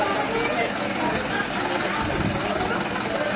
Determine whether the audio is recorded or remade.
recorded